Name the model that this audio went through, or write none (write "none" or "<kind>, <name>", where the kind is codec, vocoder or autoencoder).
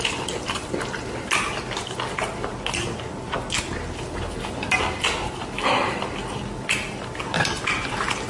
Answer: none